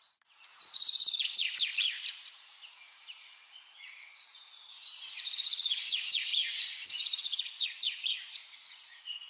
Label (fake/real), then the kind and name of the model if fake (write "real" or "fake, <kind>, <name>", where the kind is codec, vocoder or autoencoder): fake, vocoder, Vocos